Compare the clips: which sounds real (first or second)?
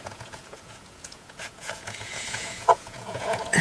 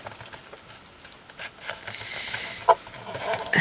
second